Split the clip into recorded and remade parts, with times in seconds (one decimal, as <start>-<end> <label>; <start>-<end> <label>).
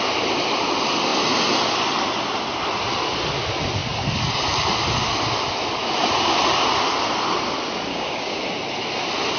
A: 0.0-7.9 recorded; 7.9-8.4 remade; 8.4-9.4 recorded